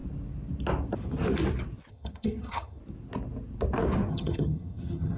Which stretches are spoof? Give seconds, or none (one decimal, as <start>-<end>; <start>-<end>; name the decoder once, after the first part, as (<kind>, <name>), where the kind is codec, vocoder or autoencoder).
1.9-2.8 (vocoder, HiFi-GAN); 4.1-5.2